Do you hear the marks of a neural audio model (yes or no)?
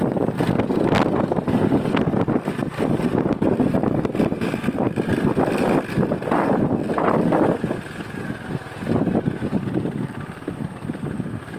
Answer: no